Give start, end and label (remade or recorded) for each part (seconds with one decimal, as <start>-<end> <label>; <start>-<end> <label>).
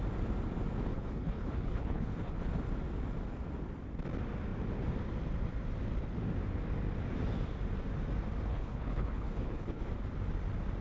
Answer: 0.0-0.9 recorded; 0.9-2.5 remade; 2.5-8.5 recorded; 8.5-9.9 remade; 9.9-10.8 recorded